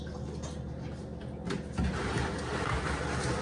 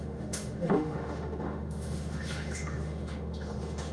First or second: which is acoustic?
first